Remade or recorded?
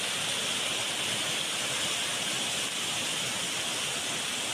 recorded